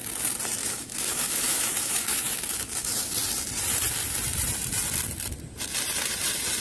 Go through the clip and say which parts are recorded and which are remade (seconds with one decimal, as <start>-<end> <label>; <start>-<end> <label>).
0.0-0.6 recorded; 0.6-3.1 remade; 3.1-6.6 recorded